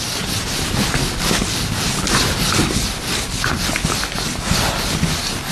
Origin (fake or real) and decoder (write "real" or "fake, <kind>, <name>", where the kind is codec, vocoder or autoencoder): real